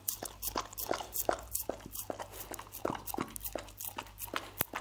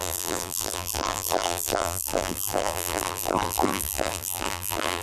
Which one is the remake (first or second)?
second